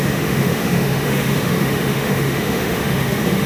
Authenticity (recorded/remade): remade